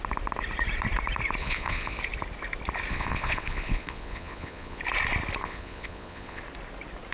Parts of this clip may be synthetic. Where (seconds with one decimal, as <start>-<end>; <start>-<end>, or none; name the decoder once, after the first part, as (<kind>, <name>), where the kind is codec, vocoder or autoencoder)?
1.4-2.0 (vocoder, Vocos); 2.9-4.8; 5.4-6.4